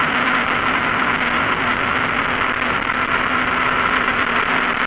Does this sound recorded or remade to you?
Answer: recorded